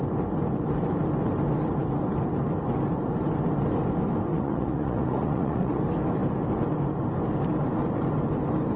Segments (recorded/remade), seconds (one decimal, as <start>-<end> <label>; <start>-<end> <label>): 0.0-4.3 recorded; 4.3-5.8 remade; 5.8-8.8 recorded